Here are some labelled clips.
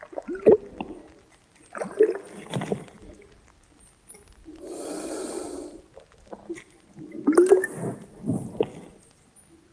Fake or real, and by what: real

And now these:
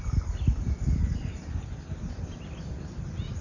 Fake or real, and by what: fake, vocoder, BigVGAN v2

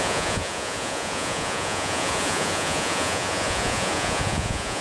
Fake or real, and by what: fake, vocoder, Vocos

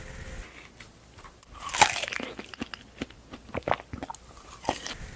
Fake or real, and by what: real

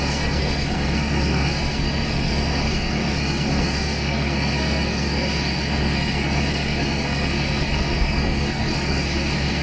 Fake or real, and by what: fake, codec, SNAC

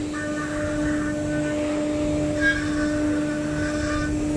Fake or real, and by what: real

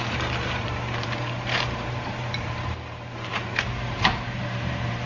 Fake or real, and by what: fake, vocoder, BigVGAN v2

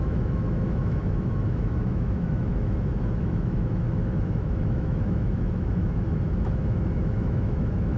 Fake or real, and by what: fake, autoencoder, DAC-VAE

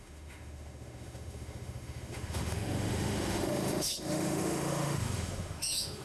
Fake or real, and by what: fake, autoencoder, DAC-VAE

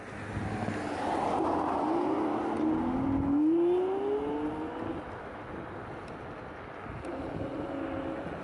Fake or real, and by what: real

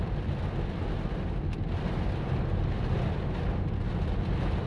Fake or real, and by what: real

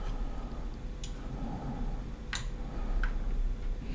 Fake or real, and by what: real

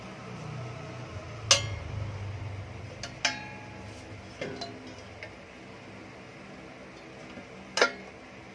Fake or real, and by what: real